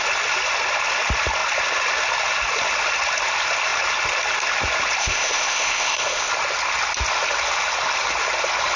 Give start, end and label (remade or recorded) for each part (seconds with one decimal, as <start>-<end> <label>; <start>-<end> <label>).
0.0-5.0 recorded; 5.0-6.3 remade; 6.3-8.8 recorded